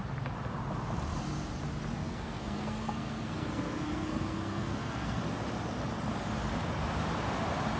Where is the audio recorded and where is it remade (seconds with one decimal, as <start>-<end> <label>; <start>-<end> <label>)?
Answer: 0.0-2.0 recorded; 2.0-5.2 remade; 5.2-7.8 recorded